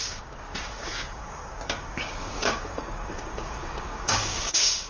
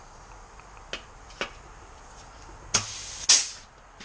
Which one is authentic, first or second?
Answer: second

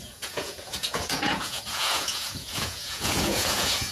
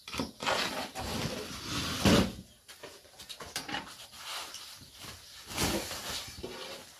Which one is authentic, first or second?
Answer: second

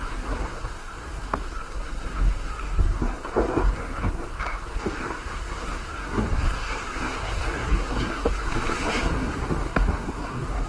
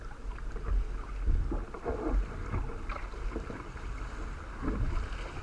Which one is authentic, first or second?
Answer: second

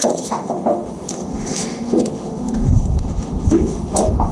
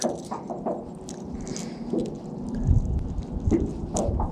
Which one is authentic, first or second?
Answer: second